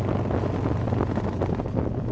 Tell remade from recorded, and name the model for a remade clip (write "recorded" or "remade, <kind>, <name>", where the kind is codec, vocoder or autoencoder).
recorded